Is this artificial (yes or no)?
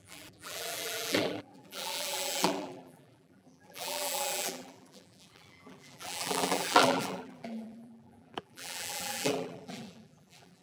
yes